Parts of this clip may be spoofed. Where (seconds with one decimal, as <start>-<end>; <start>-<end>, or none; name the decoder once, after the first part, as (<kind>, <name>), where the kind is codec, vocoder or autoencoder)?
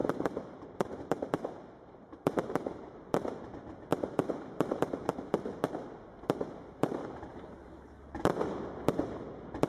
0.0-3.3 (vocoder, BigVGAN v2); 3.9-5.1; 7.3-8.4